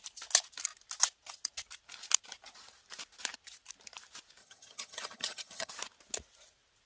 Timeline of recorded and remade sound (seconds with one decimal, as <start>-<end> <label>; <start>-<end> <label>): 0.0-4.4 recorded; 4.4-5.7 remade; 5.7-6.9 recorded